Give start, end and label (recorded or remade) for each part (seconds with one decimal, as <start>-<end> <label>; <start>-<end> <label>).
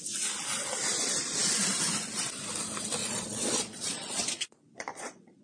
0.0-3.0 recorded; 3.0-5.4 remade